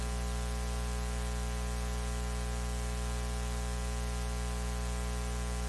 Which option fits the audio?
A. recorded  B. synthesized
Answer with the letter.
A